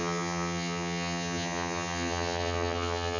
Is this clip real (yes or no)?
no